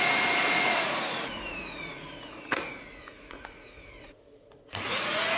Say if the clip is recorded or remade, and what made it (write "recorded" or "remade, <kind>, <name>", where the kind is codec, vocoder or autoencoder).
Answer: remade, vocoder, Vocos